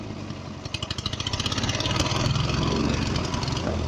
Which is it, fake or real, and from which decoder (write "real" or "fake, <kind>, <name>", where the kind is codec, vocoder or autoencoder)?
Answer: real